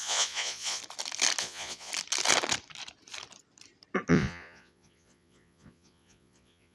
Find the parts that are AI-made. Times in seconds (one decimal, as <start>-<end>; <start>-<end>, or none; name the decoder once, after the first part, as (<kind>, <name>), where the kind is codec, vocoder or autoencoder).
0.0-0.8 (vocoder, Vocos); 1.4-1.9; 4.1-6.7